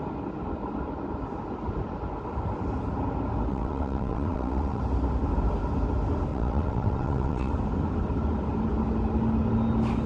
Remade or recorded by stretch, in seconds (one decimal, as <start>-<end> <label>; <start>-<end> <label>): 0.0-3.5 recorded; 3.5-4.8 remade; 4.8-6.3 recorded; 6.3-7.5 remade; 7.5-10.1 recorded